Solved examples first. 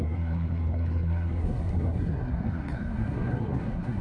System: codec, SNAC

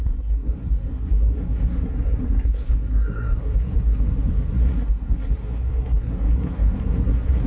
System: codec, SNAC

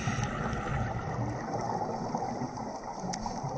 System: none